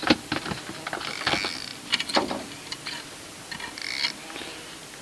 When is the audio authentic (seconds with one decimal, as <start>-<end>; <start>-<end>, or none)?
0.0-1.7; 2.7-5.0